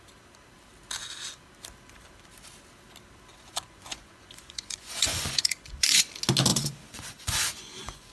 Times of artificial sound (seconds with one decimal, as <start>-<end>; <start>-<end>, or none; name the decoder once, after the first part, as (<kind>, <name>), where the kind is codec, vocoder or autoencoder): 3.3-6.1 (vocoder, Vocos); 6.5-8.1